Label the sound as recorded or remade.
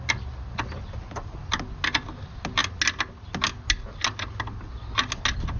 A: recorded